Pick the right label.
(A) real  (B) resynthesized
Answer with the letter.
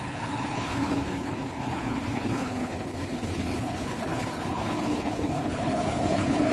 B